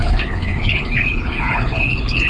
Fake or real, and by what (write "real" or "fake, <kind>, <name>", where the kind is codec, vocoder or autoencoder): fake, codec, HILCodec